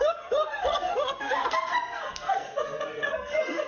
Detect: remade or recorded remade